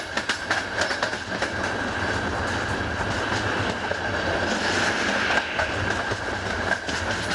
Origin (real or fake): real